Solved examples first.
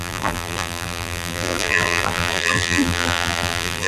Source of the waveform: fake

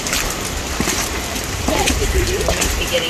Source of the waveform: fake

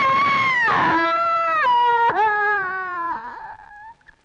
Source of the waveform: fake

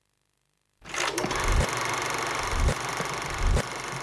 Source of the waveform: fake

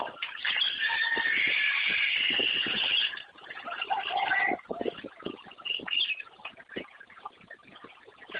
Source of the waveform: real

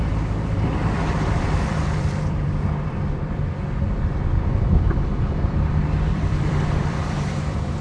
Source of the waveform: fake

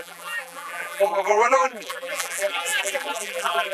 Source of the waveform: fake